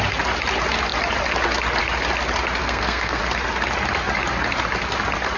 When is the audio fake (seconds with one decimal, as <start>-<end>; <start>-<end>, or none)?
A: 2.6-3.2